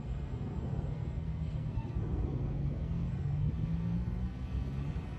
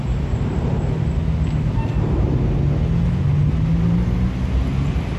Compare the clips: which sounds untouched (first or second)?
second